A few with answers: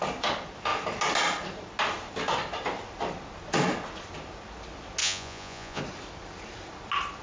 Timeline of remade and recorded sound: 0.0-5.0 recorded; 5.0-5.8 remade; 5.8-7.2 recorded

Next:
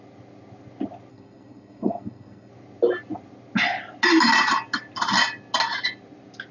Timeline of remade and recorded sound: 0.0-1.1 recorded; 1.1-2.5 remade; 2.5-6.5 recorded

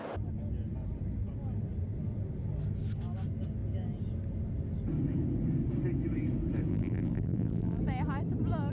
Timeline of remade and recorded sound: 0.0-6.7 recorded; 6.7-7.8 remade; 7.8-8.7 recorded

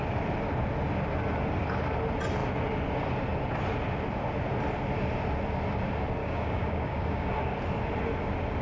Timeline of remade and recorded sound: 0.0-6.2 recorded; 6.2-7.3 remade; 7.3-8.6 recorded

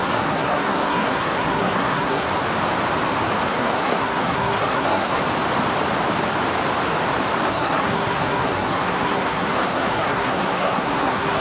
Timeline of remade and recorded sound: 0.0-2.3 remade; 2.3-3.5 recorded; 3.5-5.2 remade; 5.2-7.5 recorded; 7.5-11.4 remade